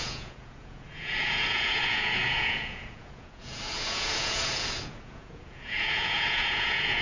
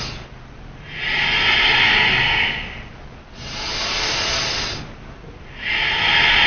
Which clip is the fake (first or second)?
first